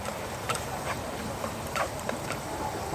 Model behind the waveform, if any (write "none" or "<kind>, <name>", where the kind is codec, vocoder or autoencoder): vocoder, BigVGAN v2